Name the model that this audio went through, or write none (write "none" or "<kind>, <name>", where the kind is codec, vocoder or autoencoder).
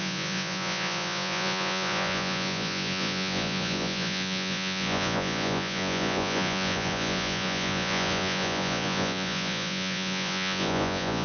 vocoder, Vocos